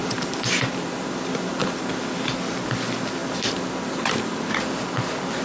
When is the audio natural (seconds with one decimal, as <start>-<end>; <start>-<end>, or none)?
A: 2.0-3.2; 4.5-5.4